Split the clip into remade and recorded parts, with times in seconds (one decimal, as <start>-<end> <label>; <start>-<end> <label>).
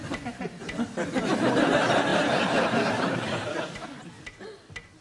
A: 0.0-5.0 recorded